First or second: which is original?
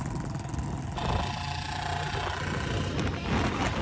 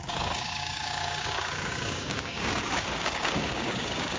first